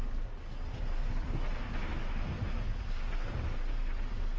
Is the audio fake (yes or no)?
no